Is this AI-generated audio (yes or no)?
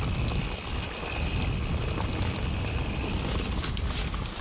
no